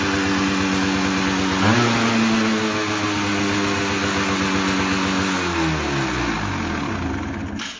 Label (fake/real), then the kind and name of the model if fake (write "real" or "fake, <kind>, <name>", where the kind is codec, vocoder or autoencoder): real